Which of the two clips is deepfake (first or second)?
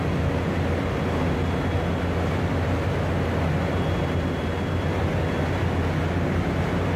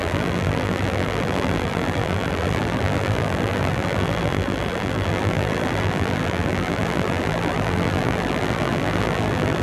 second